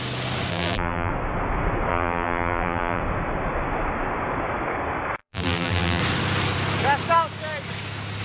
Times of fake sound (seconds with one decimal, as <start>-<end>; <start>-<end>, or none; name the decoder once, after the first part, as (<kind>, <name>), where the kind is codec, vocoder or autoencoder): 0.5-1.1 (vocoder, BigVGAN v2); 1.9-3.0; 5.2-6.0